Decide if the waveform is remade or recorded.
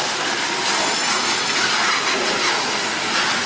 recorded